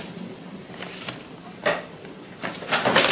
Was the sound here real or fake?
real